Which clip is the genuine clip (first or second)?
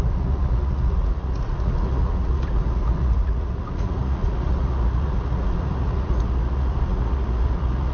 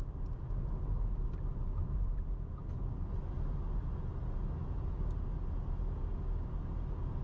second